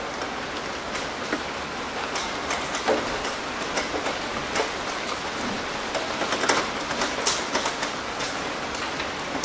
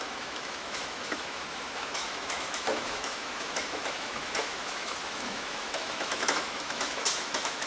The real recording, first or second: first